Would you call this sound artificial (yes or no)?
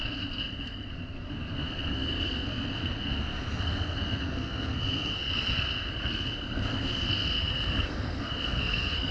yes